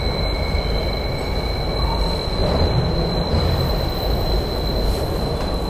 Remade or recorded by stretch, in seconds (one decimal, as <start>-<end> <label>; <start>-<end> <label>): 0.0-2.4 recorded; 2.4-4.1 remade; 4.1-5.7 recorded